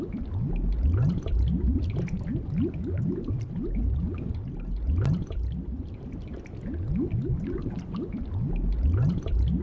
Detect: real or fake real